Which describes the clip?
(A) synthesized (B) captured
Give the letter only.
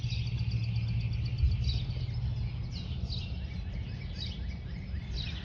B